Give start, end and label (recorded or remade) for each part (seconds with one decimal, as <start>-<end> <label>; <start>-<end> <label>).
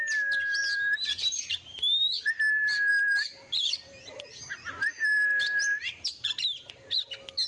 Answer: 0.0-0.6 recorded; 0.6-2.4 remade; 2.4-2.9 recorded; 2.9-6.7 remade; 6.7-7.5 recorded